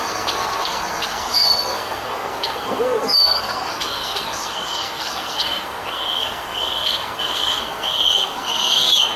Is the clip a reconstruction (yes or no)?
yes